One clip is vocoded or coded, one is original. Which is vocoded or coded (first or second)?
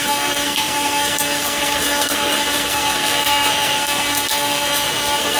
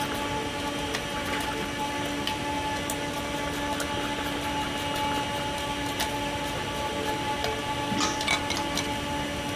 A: first